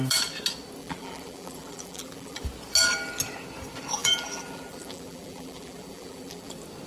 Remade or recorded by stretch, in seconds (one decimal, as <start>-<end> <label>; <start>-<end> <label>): 0.0-0.8 recorded; 0.8-2.4 remade; 2.4-4.0 recorded; 4.0-6.5 remade; 6.5-6.9 recorded